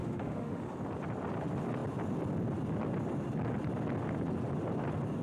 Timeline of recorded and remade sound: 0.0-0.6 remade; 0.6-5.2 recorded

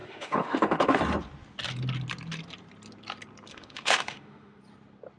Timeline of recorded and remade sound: 0.0-1.0 remade; 1.0-3.5 recorded; 3.5-4.6 remade; 4.6-5.2 recorded

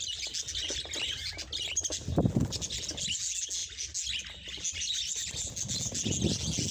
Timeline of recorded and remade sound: 0.0-6.7 recorded

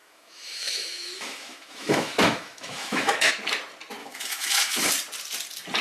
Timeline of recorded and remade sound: 0.0-3.3 remade; 3.3-4.0 recorded; 4.0-4.9 remade; 4.9-5.8 recorded

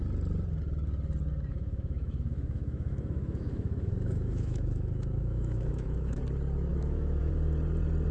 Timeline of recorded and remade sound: 0.0-1.5 recorded; 1.5-6.2 remade; 6.2-6.7 recorded; 6.7-7.3 remade; 7.3-8.1 recorded

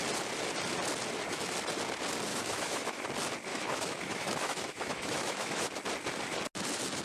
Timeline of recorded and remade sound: 0.0-2.3 recorded; 2.3-3.0 remade; 3.0-3.5 recorded; 3.5-5.7 remade; 5.7-7.0 recorded